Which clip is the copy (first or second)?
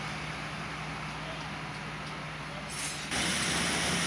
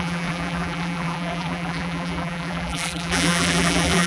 second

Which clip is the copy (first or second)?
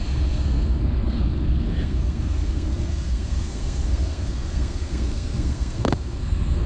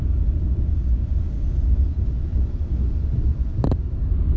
first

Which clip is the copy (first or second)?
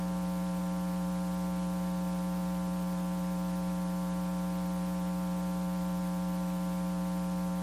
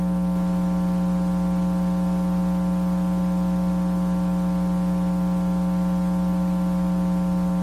first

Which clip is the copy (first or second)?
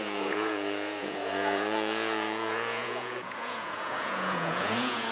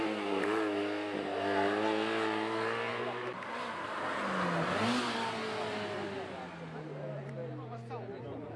first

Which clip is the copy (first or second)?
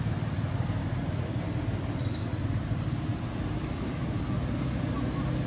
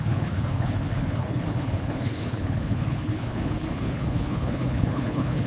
second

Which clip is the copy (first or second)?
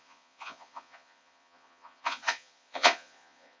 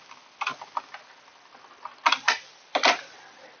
first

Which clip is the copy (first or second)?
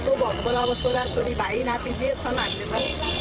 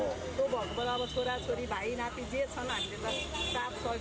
first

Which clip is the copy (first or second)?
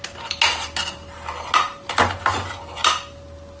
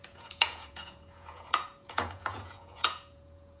second